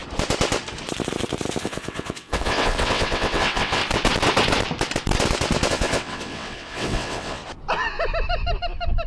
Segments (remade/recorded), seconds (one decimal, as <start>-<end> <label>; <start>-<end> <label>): 0.0-1.6 recorded; 1.6-3.8 remade; 3.8-5.7 recorded; 5.7-7.4 remade; 7.4-9.1 recorded